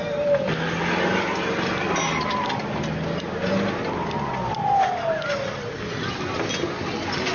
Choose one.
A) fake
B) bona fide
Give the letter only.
B